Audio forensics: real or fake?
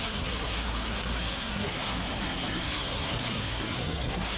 fake